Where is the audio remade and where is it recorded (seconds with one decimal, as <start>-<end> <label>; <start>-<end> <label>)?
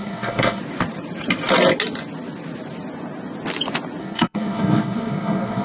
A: 0.0-0.6 remade; 0.6-4.0 recorded; 4.0-5.6 remade